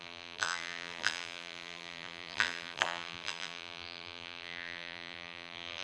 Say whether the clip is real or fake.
fake